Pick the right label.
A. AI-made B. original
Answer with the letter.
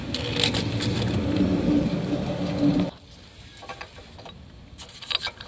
B